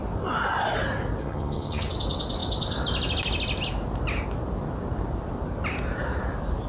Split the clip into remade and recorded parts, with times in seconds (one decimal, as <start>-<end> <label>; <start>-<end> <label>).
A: 0.0-1.2 recorded; 1.2-1.9 remade; 1.9-6.7 recorded